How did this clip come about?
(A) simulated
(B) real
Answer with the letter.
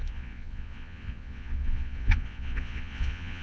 A